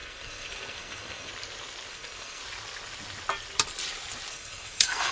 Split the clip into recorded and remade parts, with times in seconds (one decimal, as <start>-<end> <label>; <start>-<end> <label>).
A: 0.0-1.3 remade; 1.3-1.9 recorded; 1.9-2.4 remade; 2.4-4.3 recorded; 4.3-5.1 remade